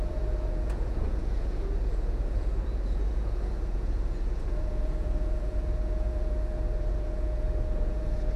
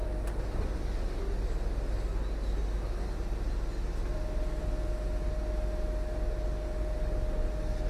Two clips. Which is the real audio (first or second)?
second